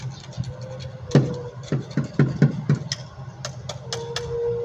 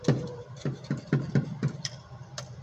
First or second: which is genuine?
first